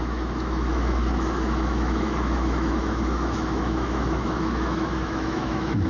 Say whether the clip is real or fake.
fake